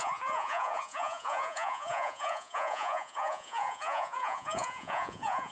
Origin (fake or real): fake